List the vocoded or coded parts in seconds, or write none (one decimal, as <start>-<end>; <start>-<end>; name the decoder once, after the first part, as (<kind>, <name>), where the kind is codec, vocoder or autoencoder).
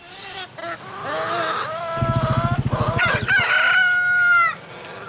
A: none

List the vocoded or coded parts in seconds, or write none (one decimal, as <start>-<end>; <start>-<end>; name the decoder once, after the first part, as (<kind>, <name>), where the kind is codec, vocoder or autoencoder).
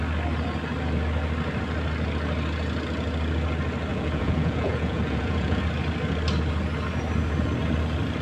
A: 3.9-5.6 (vocoder, Vocos)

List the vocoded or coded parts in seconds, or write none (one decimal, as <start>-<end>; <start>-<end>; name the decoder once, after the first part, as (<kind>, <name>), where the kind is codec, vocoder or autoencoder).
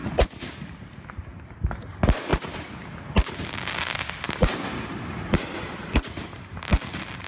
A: none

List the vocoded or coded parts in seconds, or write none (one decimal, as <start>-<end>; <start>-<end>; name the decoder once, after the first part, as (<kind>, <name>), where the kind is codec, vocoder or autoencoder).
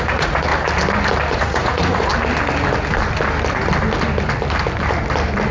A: 0.0-0.5 (vocoder, Vocos); 1.3-2.1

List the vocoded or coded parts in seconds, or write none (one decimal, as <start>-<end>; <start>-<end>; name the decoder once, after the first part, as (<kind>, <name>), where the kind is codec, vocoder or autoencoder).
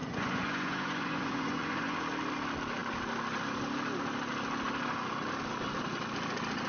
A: 0.0-2.0 (vocoder, Vocos)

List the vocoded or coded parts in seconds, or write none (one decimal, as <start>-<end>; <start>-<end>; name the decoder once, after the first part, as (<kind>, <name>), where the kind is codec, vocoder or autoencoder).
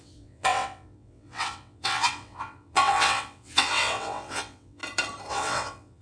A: 0.0-4.8 (vocoder, WaveNeXt); 5.3-6.0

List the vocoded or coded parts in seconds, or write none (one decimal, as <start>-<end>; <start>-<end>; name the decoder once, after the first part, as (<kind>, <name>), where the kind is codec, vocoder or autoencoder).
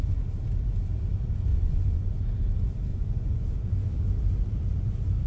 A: 1.5-2.2 (vocoder, Vocos); 2.9-3.7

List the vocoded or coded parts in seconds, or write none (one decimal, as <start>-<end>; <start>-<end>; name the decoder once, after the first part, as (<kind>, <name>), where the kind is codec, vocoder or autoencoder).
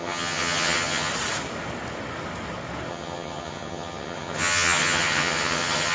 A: 0.0-1.1 (vocoder, HiFi-GAN); 2.9-5.9